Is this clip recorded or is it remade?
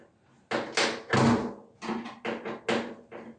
recorded